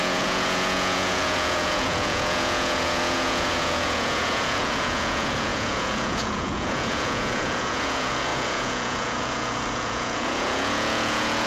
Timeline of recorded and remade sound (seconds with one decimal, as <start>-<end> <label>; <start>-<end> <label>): 0.0-11.5 remade